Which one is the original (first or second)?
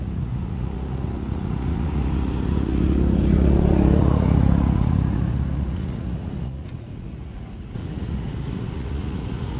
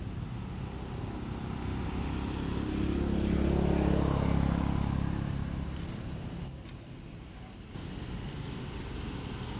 second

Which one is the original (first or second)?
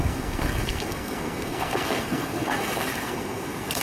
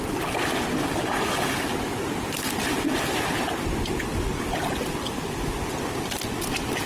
second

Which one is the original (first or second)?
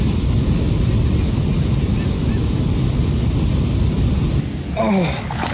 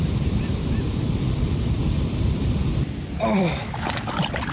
first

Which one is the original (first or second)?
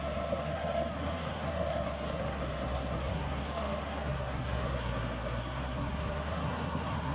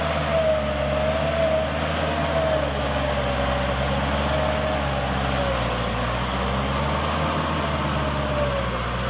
second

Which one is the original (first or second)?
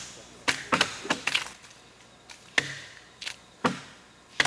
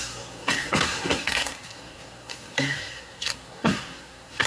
first